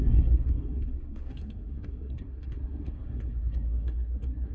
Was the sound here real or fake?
fake